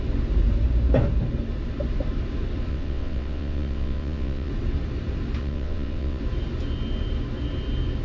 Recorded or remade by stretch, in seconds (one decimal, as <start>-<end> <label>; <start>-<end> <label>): 0.0-2.7 recorded; 2.7-4.5 remade; 4.5-5.4 recorded; 5.4-6.2 remade; 6.2-8.0 recorded